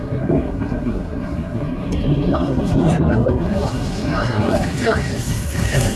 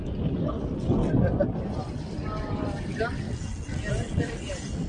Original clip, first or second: second